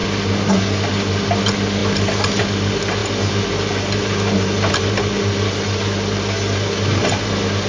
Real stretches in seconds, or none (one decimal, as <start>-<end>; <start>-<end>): 0.0-7.7